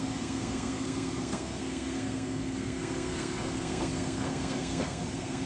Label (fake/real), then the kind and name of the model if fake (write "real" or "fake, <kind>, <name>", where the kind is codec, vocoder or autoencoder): fake, codec, SNAC